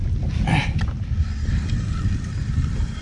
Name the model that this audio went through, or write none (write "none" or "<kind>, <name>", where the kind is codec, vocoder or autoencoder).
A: none